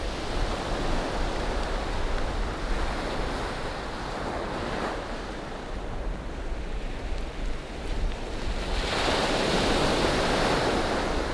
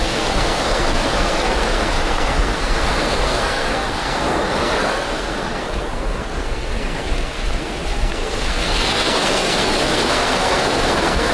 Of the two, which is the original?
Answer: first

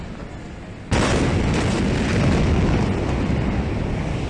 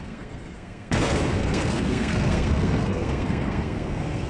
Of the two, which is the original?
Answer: first